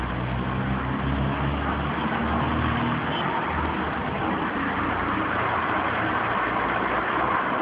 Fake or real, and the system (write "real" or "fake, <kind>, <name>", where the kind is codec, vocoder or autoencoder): real